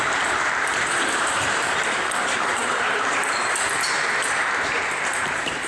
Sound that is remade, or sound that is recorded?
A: remade